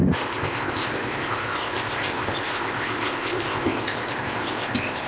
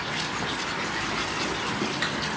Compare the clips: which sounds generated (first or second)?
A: first